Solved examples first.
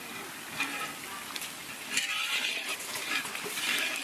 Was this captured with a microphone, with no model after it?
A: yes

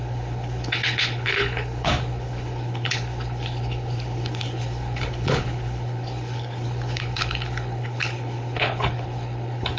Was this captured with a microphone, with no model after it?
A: no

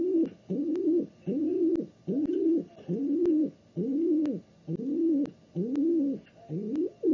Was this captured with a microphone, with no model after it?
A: yes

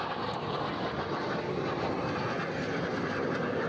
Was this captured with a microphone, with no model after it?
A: yes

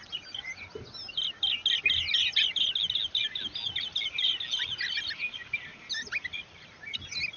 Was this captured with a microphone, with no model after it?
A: yes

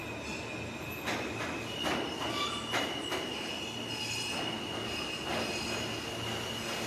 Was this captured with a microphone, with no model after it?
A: yes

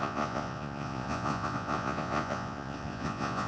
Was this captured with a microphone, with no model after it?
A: no